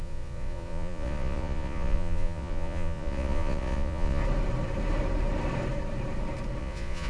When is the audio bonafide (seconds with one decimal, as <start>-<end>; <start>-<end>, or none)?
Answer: 4.2-6.6